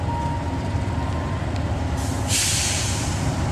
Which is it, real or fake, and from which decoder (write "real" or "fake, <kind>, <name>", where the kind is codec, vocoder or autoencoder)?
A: real